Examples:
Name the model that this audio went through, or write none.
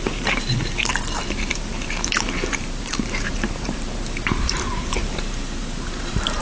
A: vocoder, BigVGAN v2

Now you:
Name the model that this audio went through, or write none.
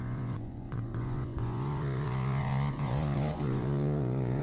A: vocoder, Vocos